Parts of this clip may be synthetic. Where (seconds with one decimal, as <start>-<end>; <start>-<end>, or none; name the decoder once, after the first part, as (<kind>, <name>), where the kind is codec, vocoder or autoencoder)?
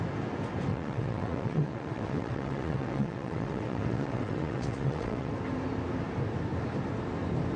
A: 0.7-5.3 (vocoder, WaveNeXt)